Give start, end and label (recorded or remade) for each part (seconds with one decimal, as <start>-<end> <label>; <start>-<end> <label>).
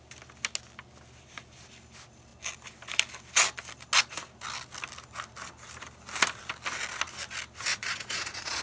0.0-7.7 recorded; 7.7-8.6 remade